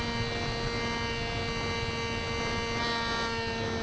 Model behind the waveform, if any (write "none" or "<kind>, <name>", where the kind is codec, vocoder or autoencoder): none